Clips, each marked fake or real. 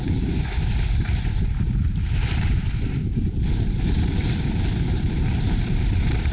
fake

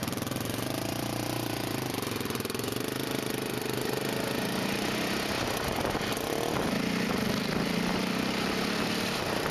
fake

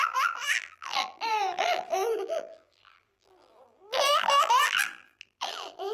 fake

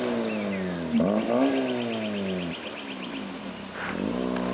real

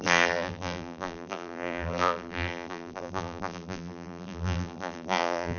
fake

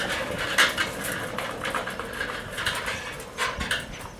real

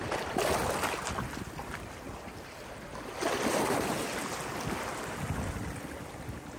real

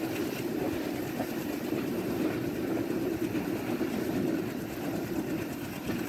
real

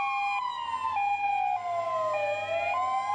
real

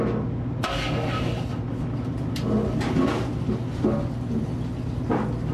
real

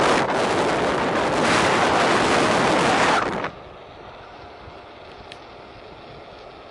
real